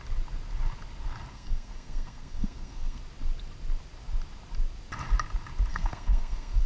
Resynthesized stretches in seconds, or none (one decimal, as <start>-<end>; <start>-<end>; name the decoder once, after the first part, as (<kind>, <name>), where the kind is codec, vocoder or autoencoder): 1.3-3.0 (codec, SNAC); 5.7-6.7